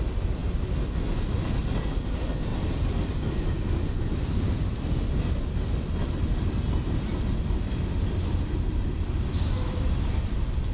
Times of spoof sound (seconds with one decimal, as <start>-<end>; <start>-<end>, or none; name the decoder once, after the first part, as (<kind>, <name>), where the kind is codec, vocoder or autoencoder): none